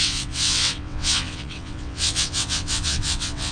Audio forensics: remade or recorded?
remade